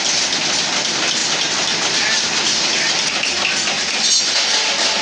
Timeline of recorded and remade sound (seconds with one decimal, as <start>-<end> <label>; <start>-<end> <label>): 0.0-5.0 recorded